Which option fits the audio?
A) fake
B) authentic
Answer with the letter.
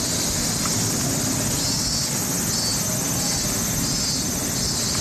B